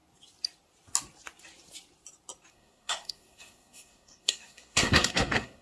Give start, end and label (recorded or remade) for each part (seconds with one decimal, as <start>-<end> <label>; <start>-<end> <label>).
0.0-2.5 recorded; 2.5-5.6 remade